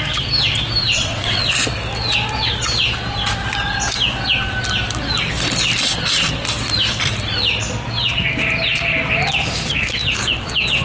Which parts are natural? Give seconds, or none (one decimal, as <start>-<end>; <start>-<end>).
0.0-0.8; 1.4-10.8